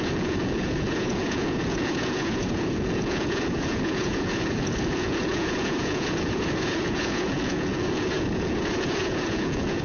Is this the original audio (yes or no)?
no